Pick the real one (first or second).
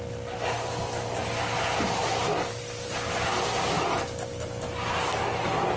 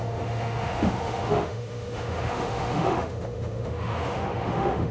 first